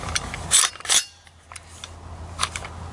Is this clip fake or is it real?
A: real